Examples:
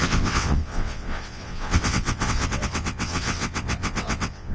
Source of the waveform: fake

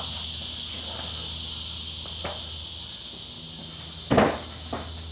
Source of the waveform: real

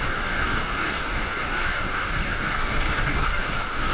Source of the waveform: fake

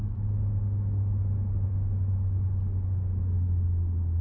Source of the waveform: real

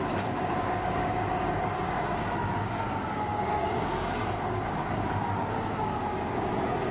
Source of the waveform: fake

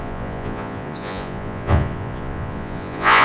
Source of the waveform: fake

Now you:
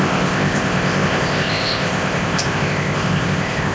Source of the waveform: fake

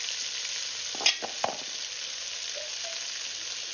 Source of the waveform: real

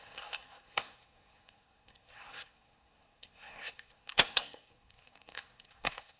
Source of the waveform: fake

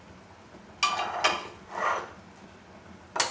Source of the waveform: real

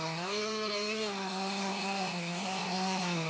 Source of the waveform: fake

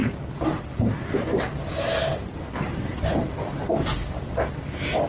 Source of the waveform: real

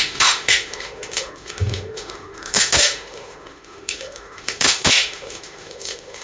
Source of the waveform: fake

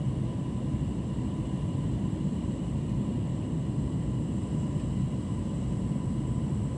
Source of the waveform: real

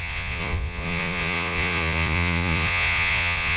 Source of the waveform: fake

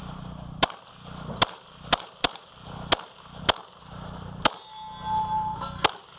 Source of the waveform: real